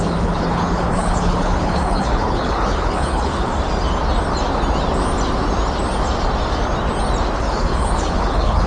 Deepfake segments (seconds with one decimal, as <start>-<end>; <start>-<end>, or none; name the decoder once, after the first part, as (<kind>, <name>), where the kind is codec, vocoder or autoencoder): 0.0-3.5 (codec, HILCodec); 7.4-8.7